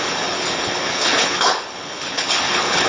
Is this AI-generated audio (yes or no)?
yes